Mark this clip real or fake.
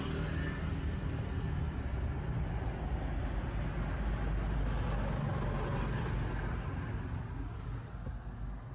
real